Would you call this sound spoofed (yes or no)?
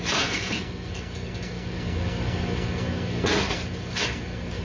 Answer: yes